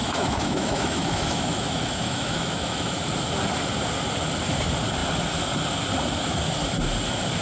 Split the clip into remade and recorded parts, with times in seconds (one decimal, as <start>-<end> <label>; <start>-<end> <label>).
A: 0.0-3.0 remade; 3.0-7.4 recorded